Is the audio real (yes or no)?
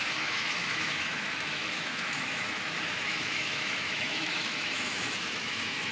no